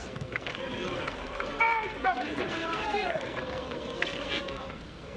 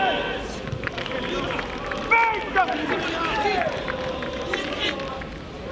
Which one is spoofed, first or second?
first